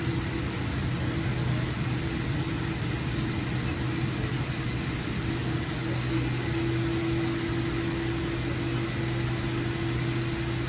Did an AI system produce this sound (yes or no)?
no